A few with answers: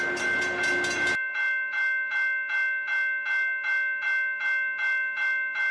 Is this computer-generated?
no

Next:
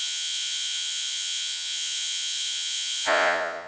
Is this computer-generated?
yes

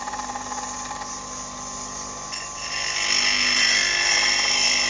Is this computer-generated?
no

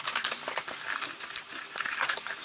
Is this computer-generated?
no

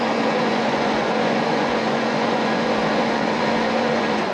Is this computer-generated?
yes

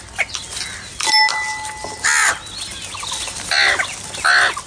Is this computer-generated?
no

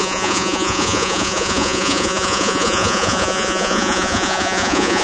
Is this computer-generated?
yes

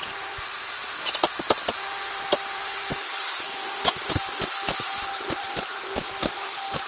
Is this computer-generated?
no